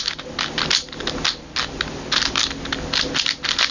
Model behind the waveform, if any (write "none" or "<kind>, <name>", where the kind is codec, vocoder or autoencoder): none